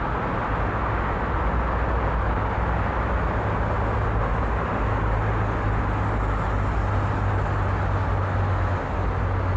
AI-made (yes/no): no